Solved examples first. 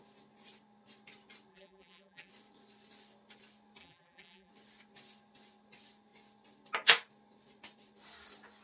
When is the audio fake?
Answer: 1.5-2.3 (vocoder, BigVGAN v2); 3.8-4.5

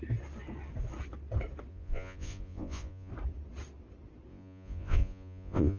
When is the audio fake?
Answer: 1.7-3.1 (vocoder, Vocos); 4.3-5.8

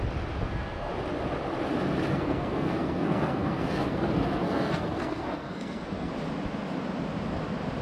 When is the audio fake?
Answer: 0.4-0.9 (codec, SNAC); 2.1-6.1

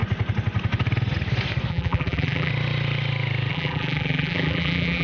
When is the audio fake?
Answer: 1.7-2.5 (vocoder, BigVGAN v2); 3.5-5.0

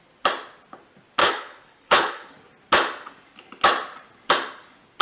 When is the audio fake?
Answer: 1.2-2.3 (codec, HILCodec)

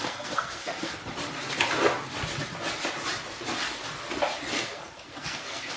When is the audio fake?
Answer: 0.0-1.0 (codec, SNAC); 4.5-5.8

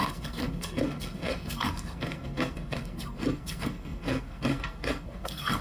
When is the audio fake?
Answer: 0.0-5.6 (codec, SNAC)